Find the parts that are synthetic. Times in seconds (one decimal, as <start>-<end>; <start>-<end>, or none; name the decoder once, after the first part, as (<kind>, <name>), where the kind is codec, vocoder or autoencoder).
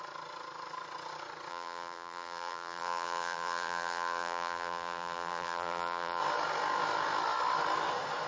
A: 1.5-6.2 (vocoder, BigVGAN v2)